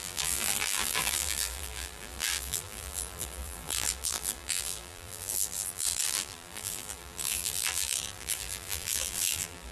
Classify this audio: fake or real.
fake